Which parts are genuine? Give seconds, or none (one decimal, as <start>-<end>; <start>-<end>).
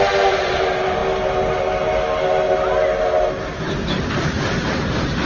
1.0-3.9